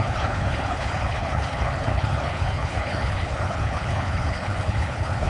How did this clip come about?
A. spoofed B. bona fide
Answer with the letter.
A